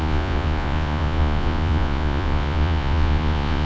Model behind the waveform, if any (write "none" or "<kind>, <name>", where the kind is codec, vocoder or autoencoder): vocoder, Vocos